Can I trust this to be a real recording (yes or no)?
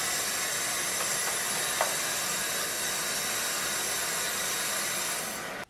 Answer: yes